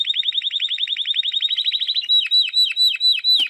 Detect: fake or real real